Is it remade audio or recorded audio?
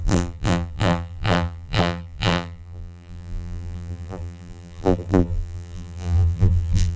remade